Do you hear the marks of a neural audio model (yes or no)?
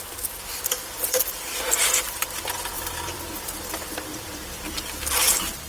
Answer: yes